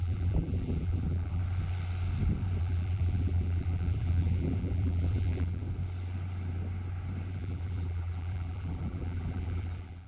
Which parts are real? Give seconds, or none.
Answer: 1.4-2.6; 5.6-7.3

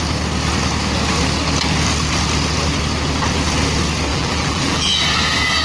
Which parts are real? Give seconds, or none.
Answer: 0.0-4.1; 4.9-5.6

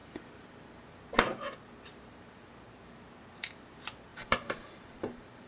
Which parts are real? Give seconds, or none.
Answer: 0.0-4.1

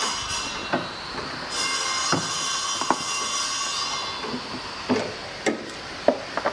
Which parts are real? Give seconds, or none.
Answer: 0.6-4.5

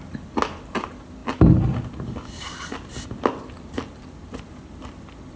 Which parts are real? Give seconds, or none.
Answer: 0.0-5.4

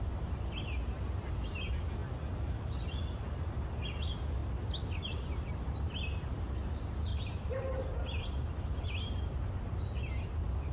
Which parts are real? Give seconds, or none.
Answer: 0.0-2.0; 3.0-7.1; 7.6-10.7

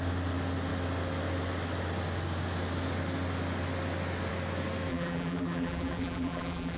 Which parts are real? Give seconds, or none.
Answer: 0.0-4.9